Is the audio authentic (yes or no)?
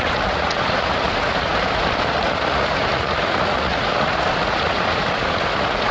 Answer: no